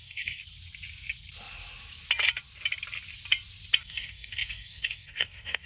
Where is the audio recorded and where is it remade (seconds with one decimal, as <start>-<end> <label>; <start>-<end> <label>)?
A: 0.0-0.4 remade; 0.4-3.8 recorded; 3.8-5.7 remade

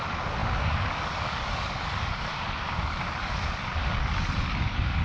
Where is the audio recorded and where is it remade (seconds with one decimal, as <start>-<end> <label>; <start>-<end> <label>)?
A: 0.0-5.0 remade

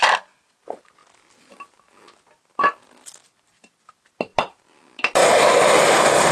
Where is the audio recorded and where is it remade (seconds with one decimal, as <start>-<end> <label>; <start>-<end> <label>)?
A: 0.0-6.3 recorded

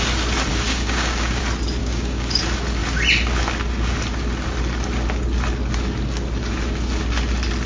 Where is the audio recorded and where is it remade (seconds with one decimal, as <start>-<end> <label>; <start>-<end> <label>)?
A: 0.0-0.5 recorded; 0.5-1.4 remade; 1.4-1.8 recorded; 1.8-2.4 remade; 2.4-7.7 recorded